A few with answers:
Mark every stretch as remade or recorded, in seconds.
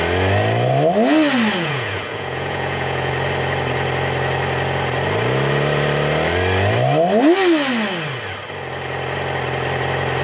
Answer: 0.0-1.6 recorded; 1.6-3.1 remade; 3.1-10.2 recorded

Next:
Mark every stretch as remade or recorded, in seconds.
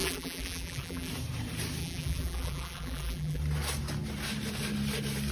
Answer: 0.0-1.1 remade; 1.1-1.8 recorded; 1.8-3.4 remade; 3.4-5.3 recorded